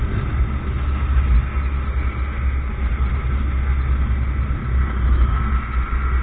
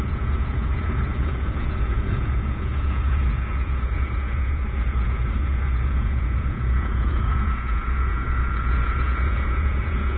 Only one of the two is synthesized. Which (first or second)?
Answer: second